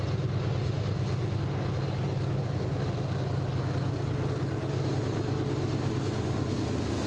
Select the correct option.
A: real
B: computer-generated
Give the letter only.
A